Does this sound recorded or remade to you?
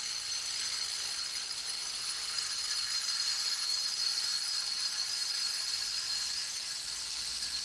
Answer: remade